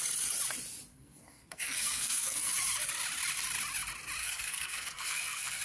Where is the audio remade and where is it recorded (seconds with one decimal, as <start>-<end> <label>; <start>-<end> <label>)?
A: 0.0-0.9 recorded; 0.9-2.5 remade; 2.5-4.2 recorded; 4.2-5.6 remade